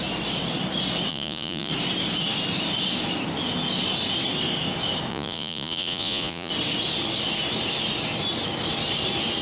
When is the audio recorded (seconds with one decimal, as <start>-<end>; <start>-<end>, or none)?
0.0-1.1; 1.7-5.1; 6.5-9.4